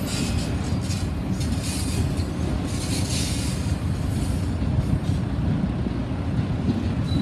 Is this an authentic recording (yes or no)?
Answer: yes